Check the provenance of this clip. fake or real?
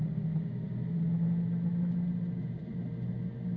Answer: real